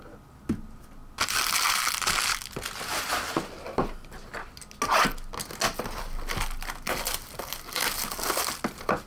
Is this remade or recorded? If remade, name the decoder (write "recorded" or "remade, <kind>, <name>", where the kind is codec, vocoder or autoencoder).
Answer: recorded